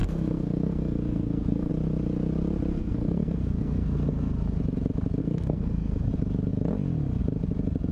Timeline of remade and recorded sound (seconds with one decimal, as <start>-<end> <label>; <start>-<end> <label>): 0.0-1.7 remade; 1.7-2.7 recorded; 2.7-4.3 remade; 4.3-5.2 recorded; 5.2-6.1 remade; 6.1-7.9 recorded